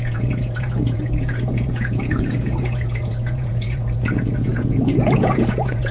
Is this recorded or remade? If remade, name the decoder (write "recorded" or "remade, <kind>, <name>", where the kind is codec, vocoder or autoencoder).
remade, vocoder, Vocos